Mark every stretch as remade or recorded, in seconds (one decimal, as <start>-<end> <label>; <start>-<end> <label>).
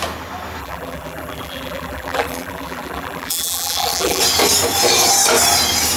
0.0-0.6 recorded; 0.6-4.2 remade; 4.2-6.0 recorded